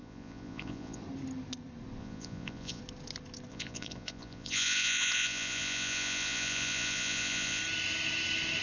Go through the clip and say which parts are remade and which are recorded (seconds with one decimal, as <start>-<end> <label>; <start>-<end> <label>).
0.0-1.0 remade; 1.0-2.0 recorded; 2.0-2.8 remade; 2.8-3.5 recorded; 3.5-7.6 remade; 7.6-8.6 recorded